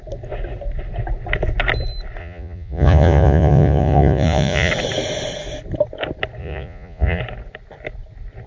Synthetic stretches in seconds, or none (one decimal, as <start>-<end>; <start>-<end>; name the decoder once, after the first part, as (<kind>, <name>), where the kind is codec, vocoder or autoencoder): 2.2-4.7 (vocoder, Vocos); 6.4-7.2